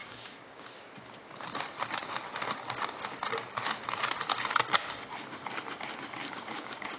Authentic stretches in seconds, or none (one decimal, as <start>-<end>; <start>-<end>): 0.8-6.2